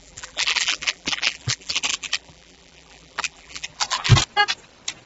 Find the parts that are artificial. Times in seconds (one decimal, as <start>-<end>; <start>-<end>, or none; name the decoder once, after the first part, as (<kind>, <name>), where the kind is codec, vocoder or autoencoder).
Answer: 0.0-4.1 (vocoder, BigVGAN v2)